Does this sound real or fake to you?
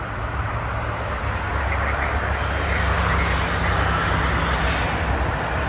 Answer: real